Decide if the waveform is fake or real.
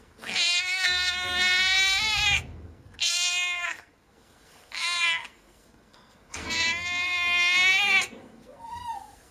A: fake